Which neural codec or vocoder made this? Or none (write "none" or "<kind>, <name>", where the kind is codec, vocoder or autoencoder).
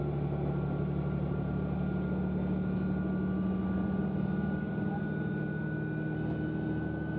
none